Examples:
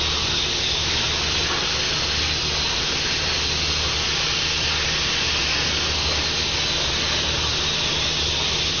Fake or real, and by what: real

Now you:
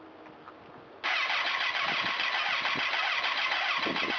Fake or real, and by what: real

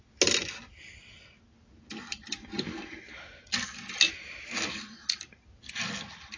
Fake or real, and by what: real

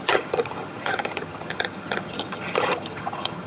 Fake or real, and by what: fake, vocoder, HiFi-GAN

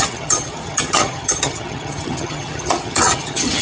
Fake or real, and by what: fake, vocoder, HiFi-GAN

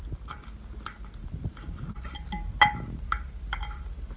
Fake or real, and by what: real